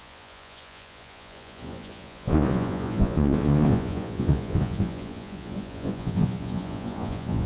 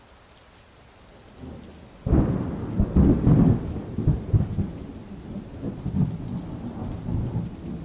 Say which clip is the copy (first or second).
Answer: first